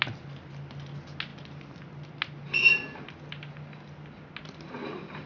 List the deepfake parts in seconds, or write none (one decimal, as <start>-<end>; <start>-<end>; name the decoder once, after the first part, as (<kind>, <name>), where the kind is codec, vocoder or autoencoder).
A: none